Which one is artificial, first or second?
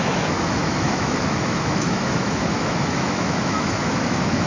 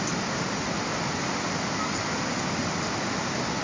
first